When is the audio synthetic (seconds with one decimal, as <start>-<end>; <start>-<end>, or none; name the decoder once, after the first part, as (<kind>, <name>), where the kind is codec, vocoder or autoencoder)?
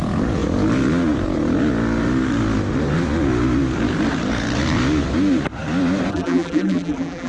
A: 6.1-7.3 (vocoder, BigVGAN v2)